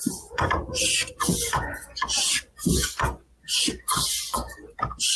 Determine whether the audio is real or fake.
fake